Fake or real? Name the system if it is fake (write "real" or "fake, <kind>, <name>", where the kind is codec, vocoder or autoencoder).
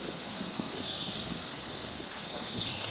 fake, codec, SNAC